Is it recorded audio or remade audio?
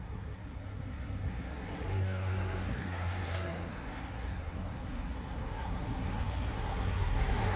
remade